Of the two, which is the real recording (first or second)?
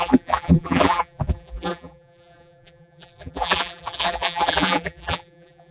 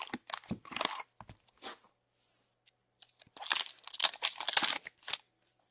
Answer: second